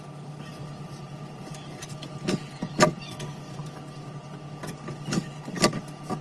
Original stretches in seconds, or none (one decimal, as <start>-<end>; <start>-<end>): 0.0-6.2